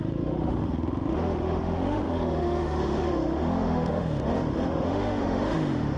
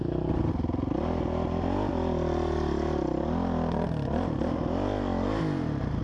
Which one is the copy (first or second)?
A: first